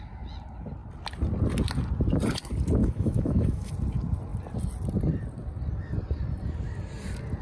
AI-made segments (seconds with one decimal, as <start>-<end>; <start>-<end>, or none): 2.8-3.7